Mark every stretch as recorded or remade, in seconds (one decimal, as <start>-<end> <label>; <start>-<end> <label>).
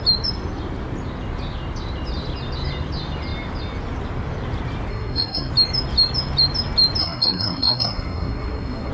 0.0-4.9 recorded; 4.9-5.5 remade; 5.5-7.0 recorded; 7.0-8.9 remade